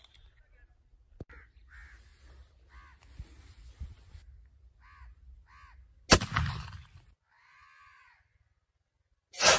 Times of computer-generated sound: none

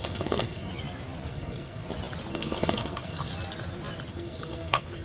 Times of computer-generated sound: 0.0-0.7; 1.3-1.8; 2.3-3.3; 4.1-5.0

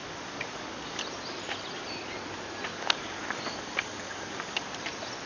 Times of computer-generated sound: 0.0-1.0; 2.7-4.6

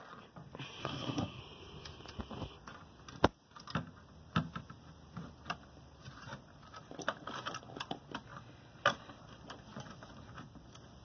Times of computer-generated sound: 0.8-1.4